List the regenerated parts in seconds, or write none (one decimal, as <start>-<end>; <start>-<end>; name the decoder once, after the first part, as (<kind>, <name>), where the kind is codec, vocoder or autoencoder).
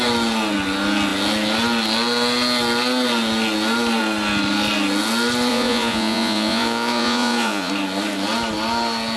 5.5-7.7 (vocoder, Vocos)